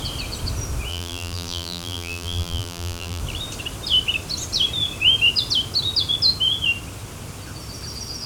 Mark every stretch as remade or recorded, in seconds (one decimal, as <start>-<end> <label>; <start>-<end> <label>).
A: 0.0-0.9 recorded; 0.9-3.2 remade; 3.2-8.3 recorded

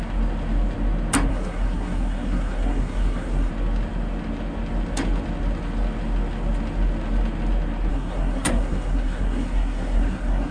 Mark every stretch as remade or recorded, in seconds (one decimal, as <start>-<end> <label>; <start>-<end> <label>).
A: 0.0-1.3 recorded; 1.3-3.5 remade; 3.5-7.9 recorded; 7.9-10.5 remade

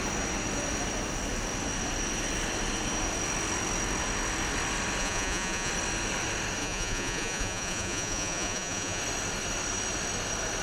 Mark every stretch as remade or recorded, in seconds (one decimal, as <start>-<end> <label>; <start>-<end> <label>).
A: 0.0-5.0 recorded; 5.0-5.7 remade; 5.7-6.6 recorded; 6.6-9.0 remade; 9.0-10.6 recorded

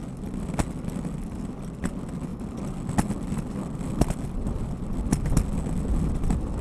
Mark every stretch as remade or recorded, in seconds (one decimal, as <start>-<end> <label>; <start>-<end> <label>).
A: 0.0-2.3 recorded; 2.3-5.4 remade; 5.4-6.6 recorded